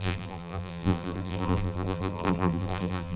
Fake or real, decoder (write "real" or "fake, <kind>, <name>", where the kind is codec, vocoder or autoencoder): fake, vocoder, BigVGAN v2